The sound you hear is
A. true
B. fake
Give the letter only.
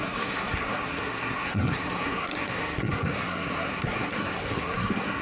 B